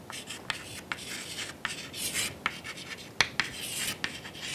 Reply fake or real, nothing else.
real